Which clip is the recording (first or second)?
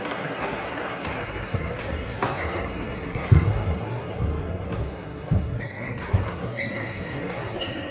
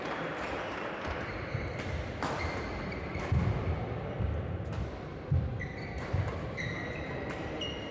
second